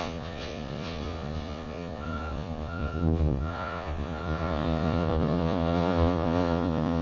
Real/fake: fake